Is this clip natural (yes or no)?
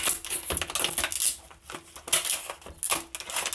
yes